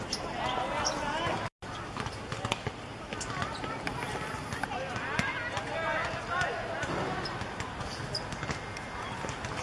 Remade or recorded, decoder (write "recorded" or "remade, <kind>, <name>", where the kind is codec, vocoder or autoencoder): recorded